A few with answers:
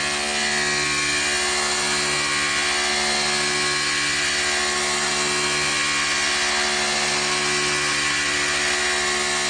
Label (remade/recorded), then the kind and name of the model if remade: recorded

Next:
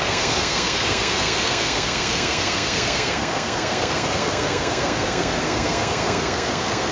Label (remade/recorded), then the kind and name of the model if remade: remade, codec, SNAC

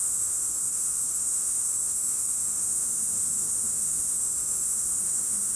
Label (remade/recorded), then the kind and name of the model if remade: remade, autoencoder, DAC-VAE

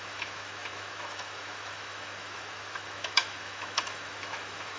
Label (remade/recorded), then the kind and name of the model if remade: remade, autoencoder, DAC-VAE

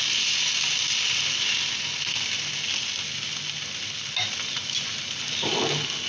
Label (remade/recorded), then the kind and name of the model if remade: recorded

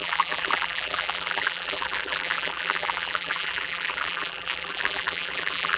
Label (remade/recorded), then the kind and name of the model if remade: remade, vocoder, BigVGAN v2